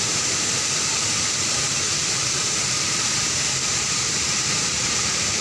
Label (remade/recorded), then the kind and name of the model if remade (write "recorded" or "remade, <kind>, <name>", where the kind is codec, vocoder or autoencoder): remade, vocoder, BigVGAN v2